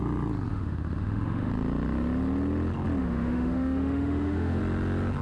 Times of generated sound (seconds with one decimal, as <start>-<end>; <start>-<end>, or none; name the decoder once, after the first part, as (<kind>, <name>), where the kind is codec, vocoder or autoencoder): 0.5-1.5 (autoencoder, DAC-VAE); 3.0-4.6